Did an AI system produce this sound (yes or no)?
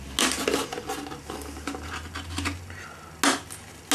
no